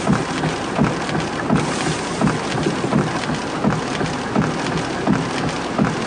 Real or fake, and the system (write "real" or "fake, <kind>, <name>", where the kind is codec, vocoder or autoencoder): real